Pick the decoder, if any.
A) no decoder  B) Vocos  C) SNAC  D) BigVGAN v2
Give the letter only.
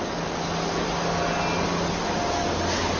A